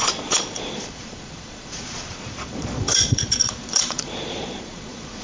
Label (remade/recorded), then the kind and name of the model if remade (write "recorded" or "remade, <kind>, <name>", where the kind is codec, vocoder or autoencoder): remade, vocoder, Vocos